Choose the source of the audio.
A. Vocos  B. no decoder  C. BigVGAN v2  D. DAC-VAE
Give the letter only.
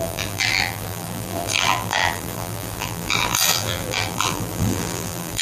C